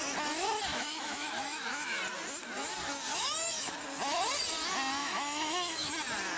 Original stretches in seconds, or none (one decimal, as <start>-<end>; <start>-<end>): 0.0-0.7; 2.0-3.1; 3.7-5.0; 5.9-6.4